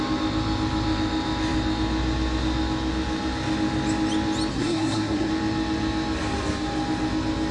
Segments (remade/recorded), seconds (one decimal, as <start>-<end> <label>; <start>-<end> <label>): 0.0-4.5 recorded; 4.5-5.3 remade; 5.3-7.5 recorded